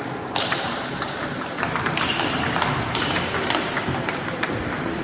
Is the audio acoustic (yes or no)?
no